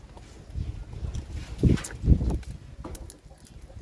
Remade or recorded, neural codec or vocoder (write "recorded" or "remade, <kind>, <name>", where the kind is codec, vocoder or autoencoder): recorded